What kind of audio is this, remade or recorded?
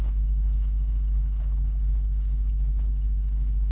remade